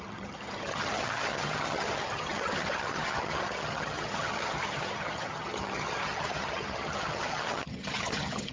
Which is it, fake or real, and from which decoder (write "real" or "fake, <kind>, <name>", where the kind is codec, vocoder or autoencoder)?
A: fake, vocoder, HiFi-GAN